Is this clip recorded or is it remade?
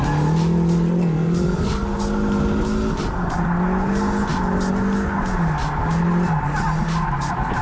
recorded